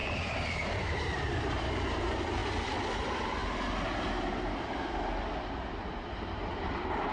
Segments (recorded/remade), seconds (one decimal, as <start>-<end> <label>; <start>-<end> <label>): 0.0-2.4 remade; 2.4-2.9 recorded; 2.9-3.4 remade; 3.4-5.7 recorded; 5.7-7.1 remade